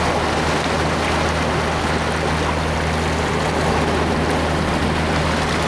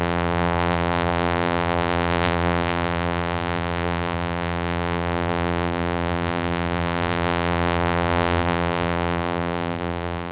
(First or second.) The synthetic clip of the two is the second